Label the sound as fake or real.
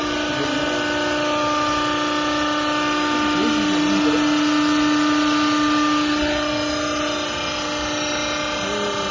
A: real